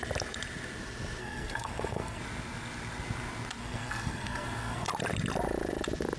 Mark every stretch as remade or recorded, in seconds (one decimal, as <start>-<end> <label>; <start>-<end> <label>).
0.0-1.2 recorded; 1.2-2.2 remade; 2.2-3.6 recorded; 3.6-4.9 remade; 4.9-6.2 recorded